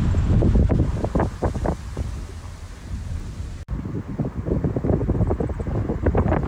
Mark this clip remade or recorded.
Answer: recorded